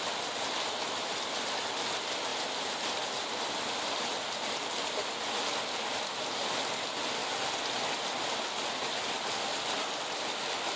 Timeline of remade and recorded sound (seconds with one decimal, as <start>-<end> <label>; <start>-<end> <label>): 0.0-10.8 recorded